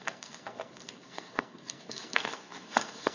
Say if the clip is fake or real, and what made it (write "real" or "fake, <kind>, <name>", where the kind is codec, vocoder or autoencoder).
fake, codec, SNAC